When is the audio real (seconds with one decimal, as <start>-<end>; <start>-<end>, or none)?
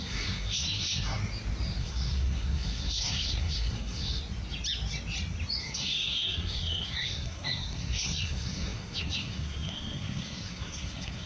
1.2-1.8; 4.2-5.6